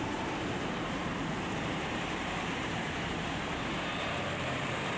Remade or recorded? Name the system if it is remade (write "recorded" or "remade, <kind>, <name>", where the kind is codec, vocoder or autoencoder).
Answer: remade, vocoder, BigVGAN v2